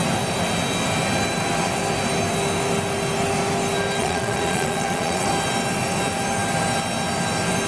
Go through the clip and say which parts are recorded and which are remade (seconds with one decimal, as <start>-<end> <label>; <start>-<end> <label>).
0.0-4.0 recorded; 4.0-5.3 remade; 5.3-7.7 recorded